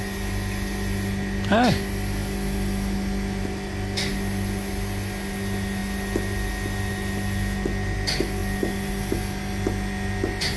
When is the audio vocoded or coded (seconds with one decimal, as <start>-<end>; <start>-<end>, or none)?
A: none